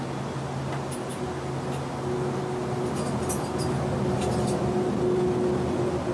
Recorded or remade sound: recorded